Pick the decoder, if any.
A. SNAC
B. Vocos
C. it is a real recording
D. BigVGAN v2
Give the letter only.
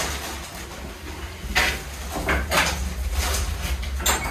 C